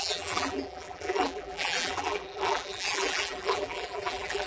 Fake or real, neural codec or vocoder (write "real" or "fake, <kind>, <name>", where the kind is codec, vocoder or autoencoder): fake, vocoder, BigVGAN v2